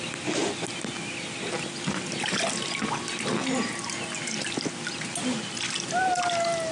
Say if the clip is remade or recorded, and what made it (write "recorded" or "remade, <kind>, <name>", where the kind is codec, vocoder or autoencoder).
recorded